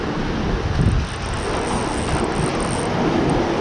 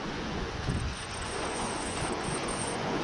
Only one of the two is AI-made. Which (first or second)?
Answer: second